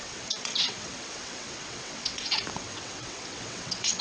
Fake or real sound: fake